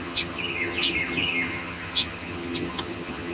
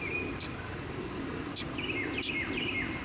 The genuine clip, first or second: second